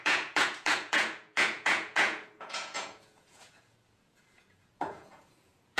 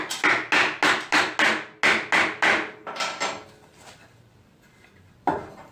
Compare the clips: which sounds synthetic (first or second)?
first